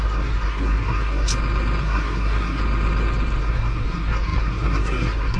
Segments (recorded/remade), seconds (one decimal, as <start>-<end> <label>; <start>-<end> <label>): 0.0-1.3 remade; 1.3-1.8 recorded; 1.8-2.6 remade; 2.6-3.4 recorded; 3.4-5.4 remade